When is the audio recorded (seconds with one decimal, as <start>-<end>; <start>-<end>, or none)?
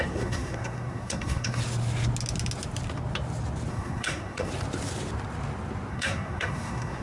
1.6-3.7; 4.5-5.9